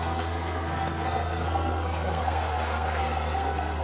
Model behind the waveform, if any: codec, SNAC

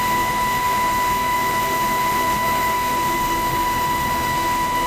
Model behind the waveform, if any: autoencoder, DAC-VAE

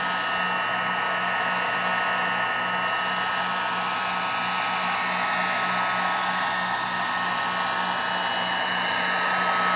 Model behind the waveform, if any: none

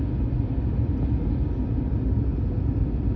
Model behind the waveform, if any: none